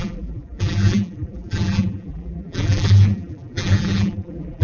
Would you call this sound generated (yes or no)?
yes